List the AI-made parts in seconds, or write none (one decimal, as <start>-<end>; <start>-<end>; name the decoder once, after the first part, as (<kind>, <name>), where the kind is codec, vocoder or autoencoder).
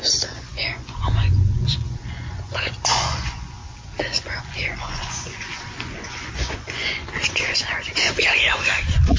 0.0-9.2 (vocoder, Vocos)